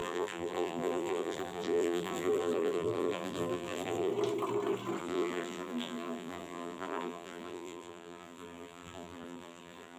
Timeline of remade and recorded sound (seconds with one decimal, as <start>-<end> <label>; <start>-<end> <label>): 0.0-4.1 remade; 4.1-5.0 recorded; 5.0-10.0 remade